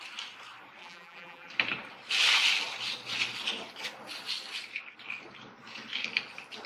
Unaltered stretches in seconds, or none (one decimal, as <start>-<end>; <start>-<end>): 0.0-0.8; 1.5-6.7